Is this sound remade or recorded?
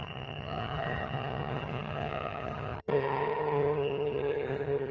remade